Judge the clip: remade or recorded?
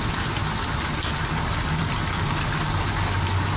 recorded